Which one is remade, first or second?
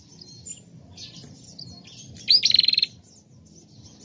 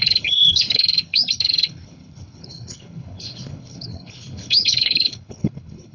second